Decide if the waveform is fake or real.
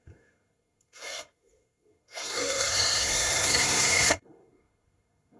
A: fake